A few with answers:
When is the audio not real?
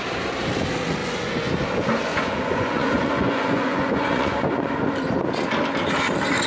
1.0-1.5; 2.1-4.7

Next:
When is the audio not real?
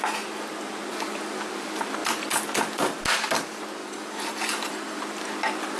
3.8-5.1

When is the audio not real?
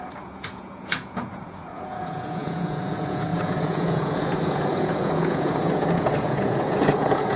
0.0-7.4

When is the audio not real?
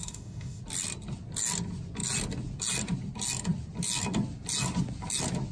0.0-0.6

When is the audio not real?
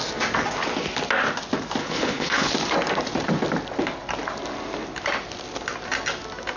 1.8-2.5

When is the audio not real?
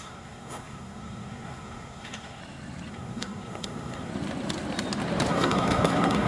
0.0-2.4; 2.9-4.1; 5.3-6.3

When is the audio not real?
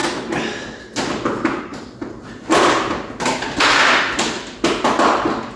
none